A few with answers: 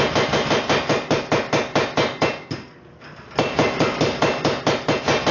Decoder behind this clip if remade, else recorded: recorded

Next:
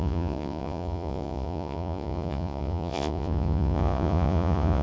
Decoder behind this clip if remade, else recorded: remade, vocoder, Vocos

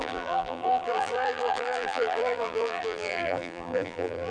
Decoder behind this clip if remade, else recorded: remade, vocoder, BigVGAN v2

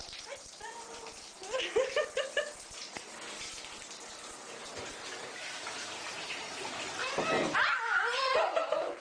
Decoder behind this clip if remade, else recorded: remade, vocoder, BigVGAN v2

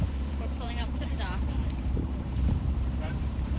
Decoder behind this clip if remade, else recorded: remade, vocoder, BigVGAN v2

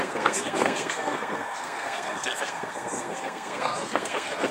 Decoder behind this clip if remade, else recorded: remade, codec, SNAC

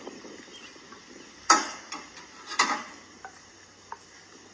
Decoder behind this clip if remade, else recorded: recorded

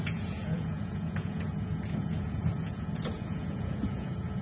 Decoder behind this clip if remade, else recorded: remade, vocoder, Vocos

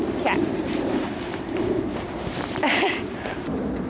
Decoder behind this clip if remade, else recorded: remade, vocoder, BigVGAN v2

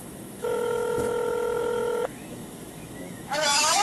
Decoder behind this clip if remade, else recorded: remade, autoencoder, DAC-VAE